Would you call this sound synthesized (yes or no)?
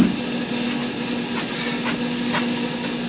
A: no